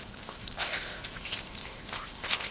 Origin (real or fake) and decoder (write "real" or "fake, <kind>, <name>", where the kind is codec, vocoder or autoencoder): fake, codec, ZipCodec